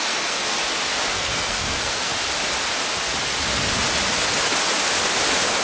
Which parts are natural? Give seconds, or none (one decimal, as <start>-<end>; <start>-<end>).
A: 0.6-1.1; 2.1-5.6